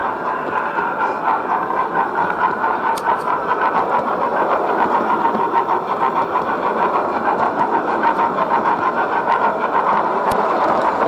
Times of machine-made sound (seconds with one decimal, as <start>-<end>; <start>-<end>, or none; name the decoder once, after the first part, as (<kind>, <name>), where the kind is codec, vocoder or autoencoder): none